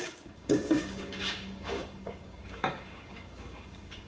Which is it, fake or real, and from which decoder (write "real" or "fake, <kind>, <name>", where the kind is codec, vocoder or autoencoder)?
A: fake, codec, DAC